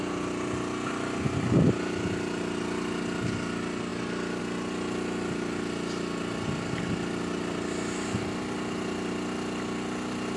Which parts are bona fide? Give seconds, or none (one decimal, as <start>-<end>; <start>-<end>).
0.0-10.4